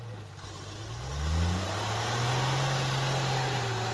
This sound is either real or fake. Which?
real